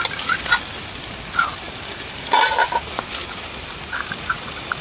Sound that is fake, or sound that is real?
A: real